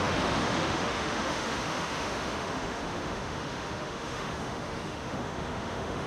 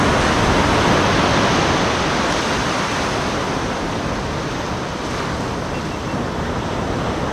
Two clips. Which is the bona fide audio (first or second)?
second